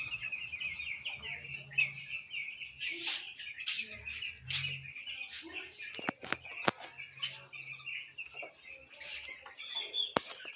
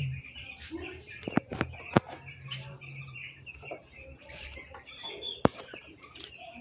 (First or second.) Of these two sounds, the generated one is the second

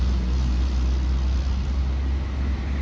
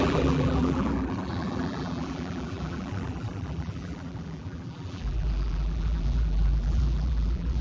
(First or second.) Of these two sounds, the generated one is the second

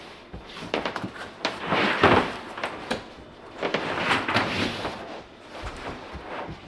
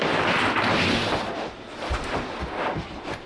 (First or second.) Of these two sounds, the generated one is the first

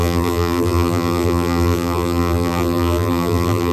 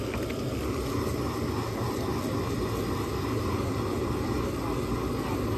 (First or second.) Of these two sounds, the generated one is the first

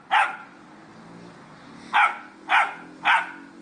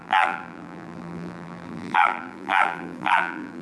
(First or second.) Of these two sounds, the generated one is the second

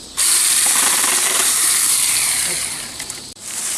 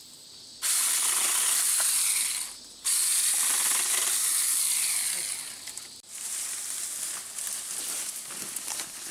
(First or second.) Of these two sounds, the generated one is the first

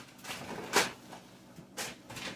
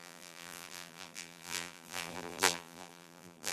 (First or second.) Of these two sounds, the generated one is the second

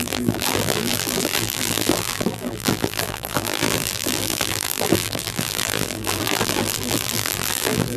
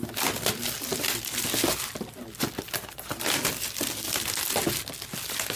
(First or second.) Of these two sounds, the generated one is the first